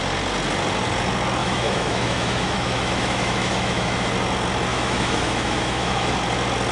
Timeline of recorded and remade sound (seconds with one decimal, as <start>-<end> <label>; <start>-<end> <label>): 0.0-1.4 recorded; 1.4-4.1 remade; 4.1-4.7 recorded; 4.7-6.1 remade; 6.1-6.7 recorded